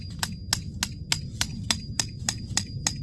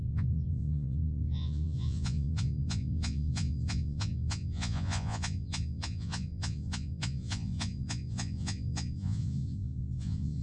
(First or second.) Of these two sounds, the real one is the first